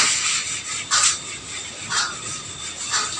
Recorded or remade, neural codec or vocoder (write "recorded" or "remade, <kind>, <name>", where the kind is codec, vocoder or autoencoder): recorded